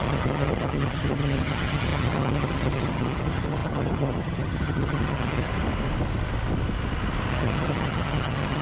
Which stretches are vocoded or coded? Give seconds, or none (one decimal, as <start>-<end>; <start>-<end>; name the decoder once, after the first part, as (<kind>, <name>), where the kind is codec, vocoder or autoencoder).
0.0-5.5 (vocoder, HiFi-GAN); 7.3-8.6